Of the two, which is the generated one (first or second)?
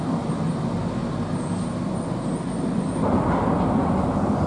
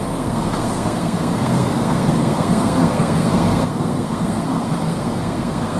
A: second